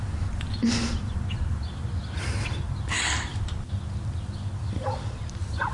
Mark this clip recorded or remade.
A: recorded